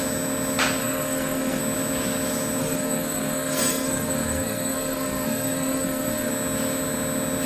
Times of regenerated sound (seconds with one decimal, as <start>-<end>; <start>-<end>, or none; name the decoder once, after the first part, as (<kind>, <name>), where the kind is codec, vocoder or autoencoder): 0.8-1.6 (codec, SNAC); 2.6-6.3